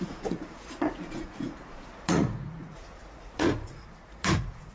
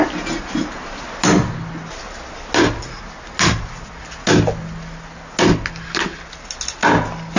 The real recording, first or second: second